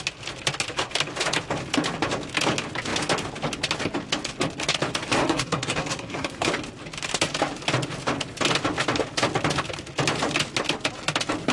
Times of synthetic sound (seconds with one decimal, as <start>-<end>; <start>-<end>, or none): 5.2-6.5